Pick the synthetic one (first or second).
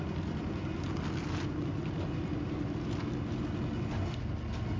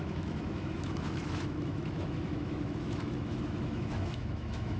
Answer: second